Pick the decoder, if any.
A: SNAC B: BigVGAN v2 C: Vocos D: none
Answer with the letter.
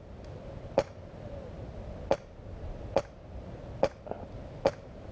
D